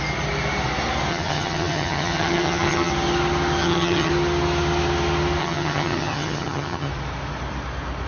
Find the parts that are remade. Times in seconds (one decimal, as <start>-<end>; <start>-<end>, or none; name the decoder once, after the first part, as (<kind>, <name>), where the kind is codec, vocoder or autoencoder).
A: 1.1-2.9 (vocoder, HiFi-GAN); 3.6-4.1; 5.4-6.9